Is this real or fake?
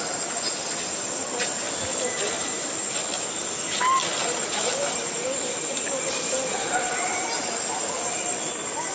real